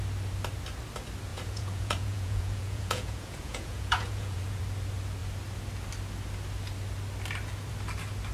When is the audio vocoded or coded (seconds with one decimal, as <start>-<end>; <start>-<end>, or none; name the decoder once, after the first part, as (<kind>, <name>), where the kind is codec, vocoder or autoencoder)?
1.3-4.6 (vocoder, Vocos)

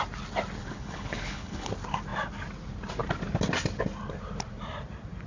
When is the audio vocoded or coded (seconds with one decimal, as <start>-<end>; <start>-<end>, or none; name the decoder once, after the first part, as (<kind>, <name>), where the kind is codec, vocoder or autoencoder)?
0.6-1.7 (codec, HILCodec)

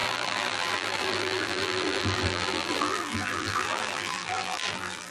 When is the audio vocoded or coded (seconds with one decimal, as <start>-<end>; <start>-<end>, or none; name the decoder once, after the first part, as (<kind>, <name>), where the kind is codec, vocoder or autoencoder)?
0.0-5.1 (vocoder, BigVGAN v2)

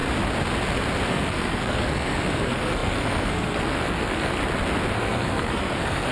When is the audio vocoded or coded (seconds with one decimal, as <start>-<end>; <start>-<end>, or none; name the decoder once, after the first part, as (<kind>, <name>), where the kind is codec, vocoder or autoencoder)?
1.1-4.4 (codec, SNAC); 4.9-6.1

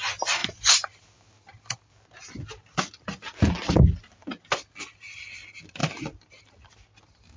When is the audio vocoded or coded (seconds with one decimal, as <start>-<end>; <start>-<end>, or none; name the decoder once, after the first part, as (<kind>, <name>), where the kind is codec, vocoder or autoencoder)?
none

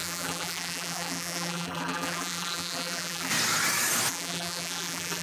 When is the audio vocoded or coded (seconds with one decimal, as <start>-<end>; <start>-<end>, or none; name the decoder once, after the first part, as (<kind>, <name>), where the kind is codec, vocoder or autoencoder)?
0.0-3.3 (vocoder, BigVGAN v2); 4.1-5.2

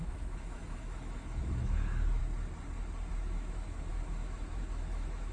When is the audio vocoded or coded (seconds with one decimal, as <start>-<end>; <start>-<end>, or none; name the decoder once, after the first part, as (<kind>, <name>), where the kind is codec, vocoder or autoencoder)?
0.0-2.2 (autoencoder, DAC-VAE); 3.1-5.3

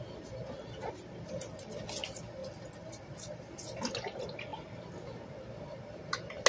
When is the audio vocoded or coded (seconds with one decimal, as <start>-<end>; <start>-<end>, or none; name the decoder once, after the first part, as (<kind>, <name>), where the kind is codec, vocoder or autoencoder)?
none